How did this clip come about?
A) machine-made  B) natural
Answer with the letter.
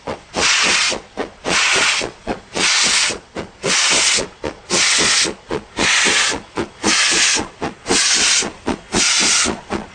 A